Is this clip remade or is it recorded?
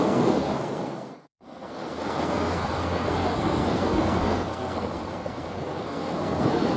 remade